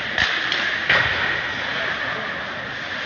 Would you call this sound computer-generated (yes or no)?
no